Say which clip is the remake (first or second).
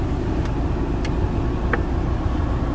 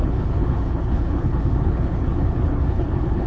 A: second